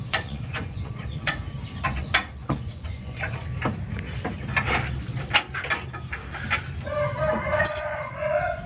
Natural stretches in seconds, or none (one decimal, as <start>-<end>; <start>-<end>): 1.4-2.0; 3.5-7.6